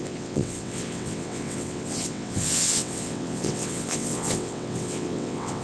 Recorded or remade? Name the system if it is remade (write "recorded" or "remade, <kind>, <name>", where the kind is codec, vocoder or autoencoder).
remade, vocoder, WaveNeXt